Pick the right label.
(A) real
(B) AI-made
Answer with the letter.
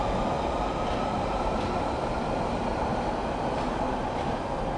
A